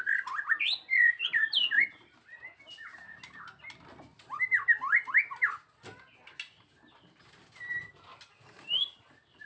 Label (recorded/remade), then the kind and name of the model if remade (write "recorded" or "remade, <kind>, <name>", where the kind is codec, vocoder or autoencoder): recorded